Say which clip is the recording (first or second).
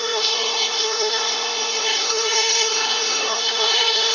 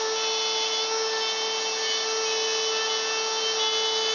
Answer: second